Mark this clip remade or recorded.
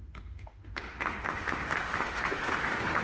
remade